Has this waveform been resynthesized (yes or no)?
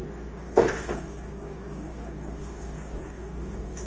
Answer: yes